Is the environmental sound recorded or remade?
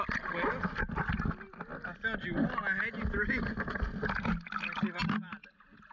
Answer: recorded